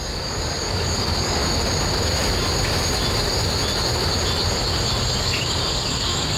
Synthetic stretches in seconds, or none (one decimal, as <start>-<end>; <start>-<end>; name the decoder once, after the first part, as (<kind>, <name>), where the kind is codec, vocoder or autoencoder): 0.0-1.4 (codec, DAC); 5.2-6.4